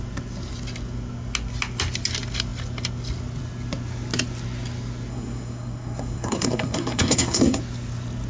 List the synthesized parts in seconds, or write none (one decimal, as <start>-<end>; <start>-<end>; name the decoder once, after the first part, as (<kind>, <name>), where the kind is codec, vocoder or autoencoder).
5.1-7.6 (codec, SNAC)